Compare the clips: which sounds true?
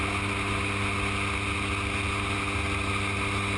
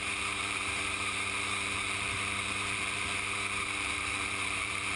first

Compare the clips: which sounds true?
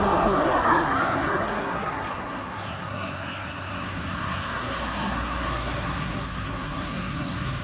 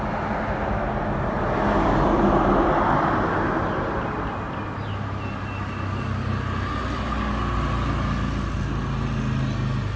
second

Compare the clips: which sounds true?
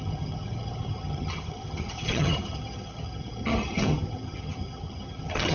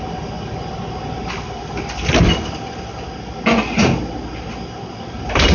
second